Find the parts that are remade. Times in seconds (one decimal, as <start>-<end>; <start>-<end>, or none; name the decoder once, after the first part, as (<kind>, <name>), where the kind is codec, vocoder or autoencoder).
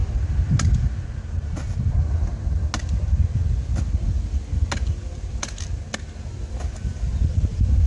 none